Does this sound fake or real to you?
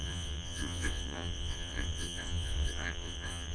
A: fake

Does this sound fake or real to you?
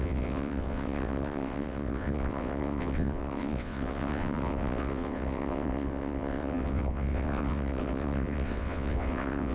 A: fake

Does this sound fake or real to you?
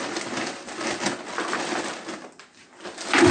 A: real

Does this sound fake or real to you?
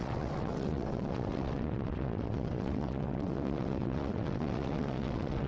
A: fake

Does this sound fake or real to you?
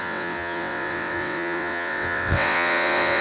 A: fake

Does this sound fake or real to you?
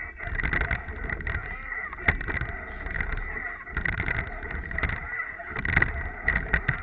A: real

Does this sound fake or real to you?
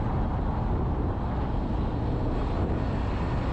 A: real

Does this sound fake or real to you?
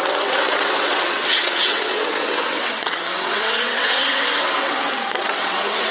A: fake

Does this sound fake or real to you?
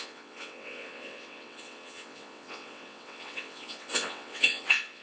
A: fake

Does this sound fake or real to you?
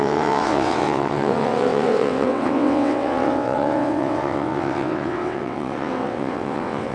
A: fake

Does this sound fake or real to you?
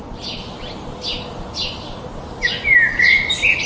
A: real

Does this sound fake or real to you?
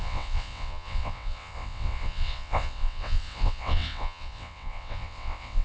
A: fake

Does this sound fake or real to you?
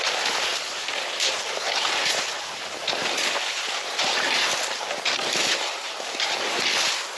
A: real